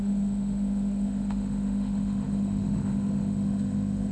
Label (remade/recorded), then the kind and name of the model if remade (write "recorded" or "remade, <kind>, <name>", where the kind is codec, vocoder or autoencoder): remade, autoencoder, DAC-VAE